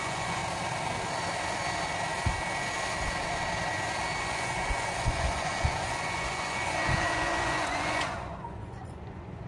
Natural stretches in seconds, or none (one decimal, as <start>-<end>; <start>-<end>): 0.4-4.2